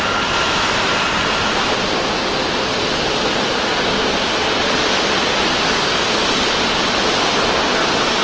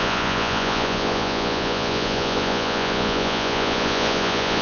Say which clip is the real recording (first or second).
first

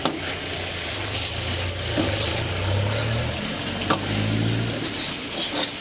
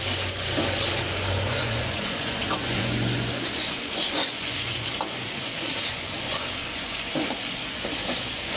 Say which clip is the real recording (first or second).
first